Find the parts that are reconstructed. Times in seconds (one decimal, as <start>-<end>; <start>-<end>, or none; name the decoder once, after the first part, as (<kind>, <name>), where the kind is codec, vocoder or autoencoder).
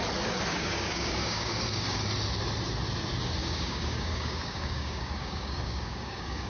0.5-2.0 (codec, DAC); 3.4-6.5